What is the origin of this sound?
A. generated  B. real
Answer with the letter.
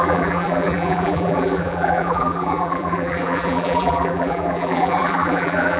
A